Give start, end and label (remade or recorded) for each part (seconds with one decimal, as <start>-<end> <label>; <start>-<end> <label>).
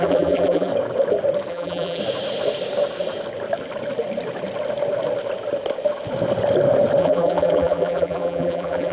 0.0-0.7 remade; 0.7-1.5 recorded; 1.5-2.0 remade; 2.0-7.0 recorded; 7.0-8.9 remade